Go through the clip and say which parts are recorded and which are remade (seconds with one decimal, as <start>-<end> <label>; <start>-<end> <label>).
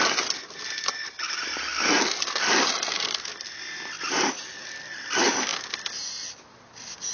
0.0-7.1 recorded